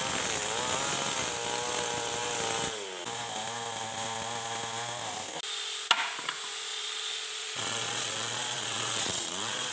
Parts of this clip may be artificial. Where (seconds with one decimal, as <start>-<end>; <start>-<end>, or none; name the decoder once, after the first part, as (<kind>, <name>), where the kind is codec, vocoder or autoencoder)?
6.7-9.7 (vocoder, Vocos)